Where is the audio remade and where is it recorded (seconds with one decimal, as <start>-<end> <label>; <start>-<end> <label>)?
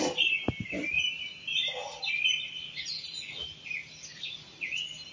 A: 0.0-5.1 recorded